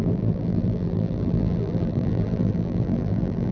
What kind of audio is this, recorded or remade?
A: remade